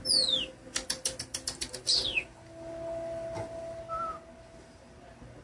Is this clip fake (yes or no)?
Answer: no